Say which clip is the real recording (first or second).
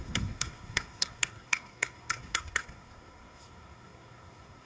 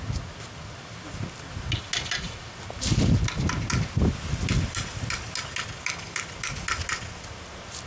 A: second